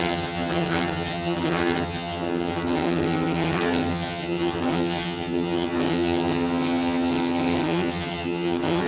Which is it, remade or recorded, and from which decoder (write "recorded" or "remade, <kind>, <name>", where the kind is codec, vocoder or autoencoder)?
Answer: remade, vocoder, HiFi-GAN